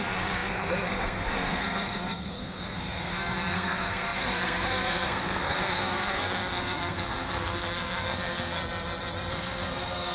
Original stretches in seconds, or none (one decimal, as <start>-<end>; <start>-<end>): 8.6-9.3